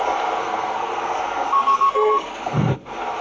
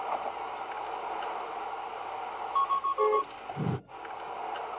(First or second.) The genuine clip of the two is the second